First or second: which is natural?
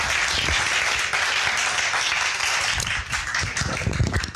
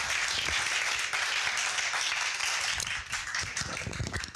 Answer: first